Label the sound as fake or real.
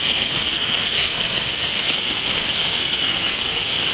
fake